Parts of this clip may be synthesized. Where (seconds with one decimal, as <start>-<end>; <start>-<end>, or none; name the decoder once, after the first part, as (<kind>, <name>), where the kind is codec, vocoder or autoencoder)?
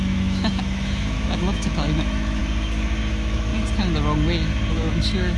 0.0-2.4 (autoencoder, DAC-VAE); 3.1-3.5; 4.7-5.4